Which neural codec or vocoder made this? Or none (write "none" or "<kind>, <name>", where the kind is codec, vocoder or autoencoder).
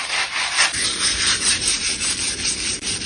vocoder, BigVGAN v2